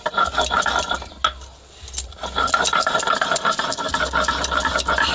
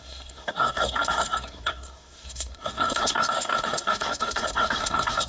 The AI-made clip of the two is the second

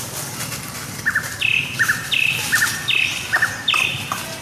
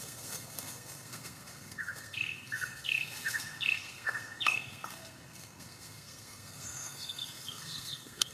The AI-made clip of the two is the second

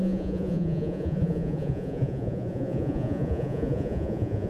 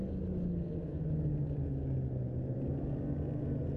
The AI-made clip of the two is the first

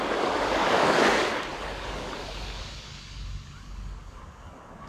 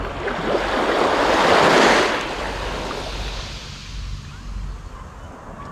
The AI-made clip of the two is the first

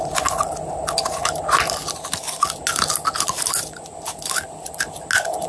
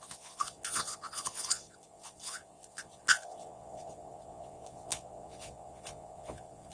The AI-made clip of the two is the second